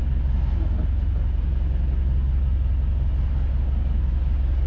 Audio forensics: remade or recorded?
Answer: recorded